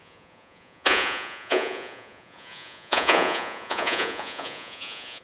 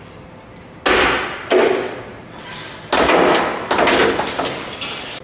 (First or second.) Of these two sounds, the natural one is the second